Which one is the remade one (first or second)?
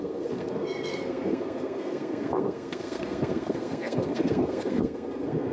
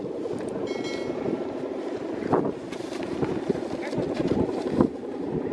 first